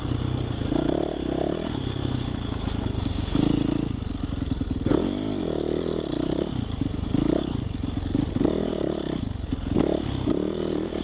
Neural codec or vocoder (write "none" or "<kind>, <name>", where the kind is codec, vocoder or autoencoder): none